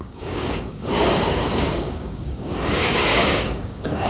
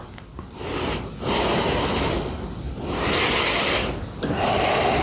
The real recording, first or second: second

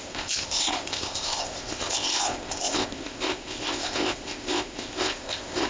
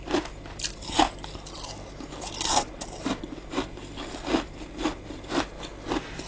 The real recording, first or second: second